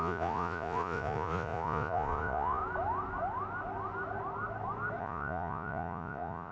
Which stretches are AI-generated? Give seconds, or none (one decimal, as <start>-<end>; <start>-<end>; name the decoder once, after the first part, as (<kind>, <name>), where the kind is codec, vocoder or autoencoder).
0.0-2.6 (vocoder, Vocos); 5.0-6.5